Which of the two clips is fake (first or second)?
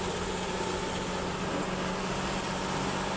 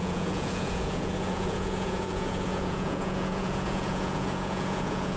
second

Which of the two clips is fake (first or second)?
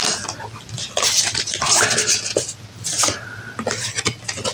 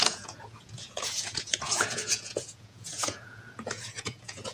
second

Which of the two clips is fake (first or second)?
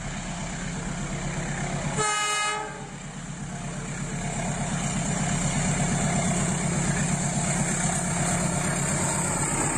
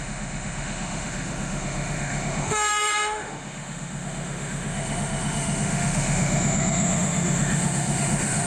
second